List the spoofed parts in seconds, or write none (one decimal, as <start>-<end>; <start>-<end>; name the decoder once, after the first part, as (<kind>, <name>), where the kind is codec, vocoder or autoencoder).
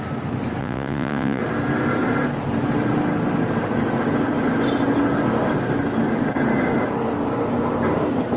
0.6-1.4 (vocoder, Vocos)